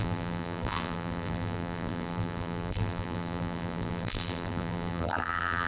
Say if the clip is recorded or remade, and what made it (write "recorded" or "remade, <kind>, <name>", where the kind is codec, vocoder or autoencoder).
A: remade, vocoder, BigVGAN v2